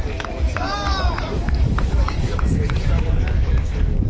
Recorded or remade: remade